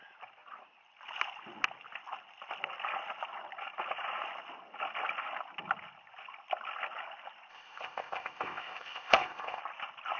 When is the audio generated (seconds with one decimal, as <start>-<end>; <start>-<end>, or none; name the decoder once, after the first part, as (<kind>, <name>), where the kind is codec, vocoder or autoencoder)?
7.5-9.6 (codec, ZipCodec)